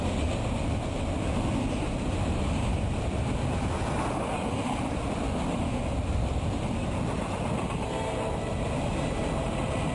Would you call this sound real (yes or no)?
yes